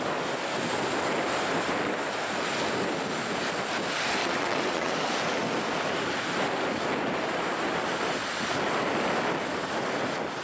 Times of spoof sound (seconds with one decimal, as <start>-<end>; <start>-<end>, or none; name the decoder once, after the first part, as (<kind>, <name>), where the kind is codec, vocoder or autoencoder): 4.2-4.9 (vocoder, WaveNeXt)